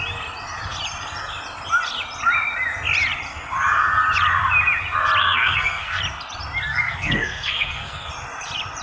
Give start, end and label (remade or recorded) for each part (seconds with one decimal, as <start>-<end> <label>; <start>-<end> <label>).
0.0-5.2 recorded; 5.2-6.0 remade; 6.0-6.7 recorded; 6.7-8.1 remade; 8.1-8.8 recorded